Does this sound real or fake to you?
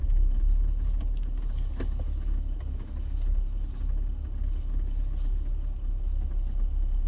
real